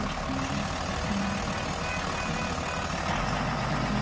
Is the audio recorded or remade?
recorded